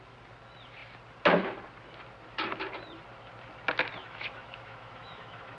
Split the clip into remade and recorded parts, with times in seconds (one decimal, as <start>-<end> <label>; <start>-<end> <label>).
0.0-4.0 recorded; 4.0-5.6 remade